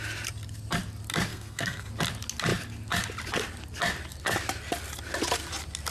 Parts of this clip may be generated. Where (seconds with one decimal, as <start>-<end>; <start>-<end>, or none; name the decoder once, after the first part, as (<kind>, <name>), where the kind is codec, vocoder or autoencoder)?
1.3-1.9 (codec, SNAC)

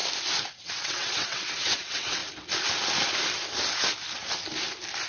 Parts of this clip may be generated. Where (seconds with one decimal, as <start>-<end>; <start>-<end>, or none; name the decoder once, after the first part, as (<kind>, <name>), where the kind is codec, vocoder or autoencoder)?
0.6-2.2 (vocoder, WaveNeXt)

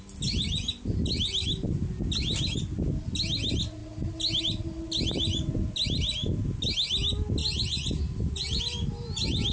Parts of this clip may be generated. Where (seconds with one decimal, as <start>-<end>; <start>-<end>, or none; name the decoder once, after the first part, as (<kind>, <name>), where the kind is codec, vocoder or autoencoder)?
7.4-8.6 (vocoder, BigVGAN v2)

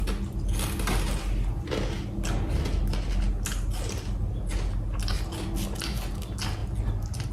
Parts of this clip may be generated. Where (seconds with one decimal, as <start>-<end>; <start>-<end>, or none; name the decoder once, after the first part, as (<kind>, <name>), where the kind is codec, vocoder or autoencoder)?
none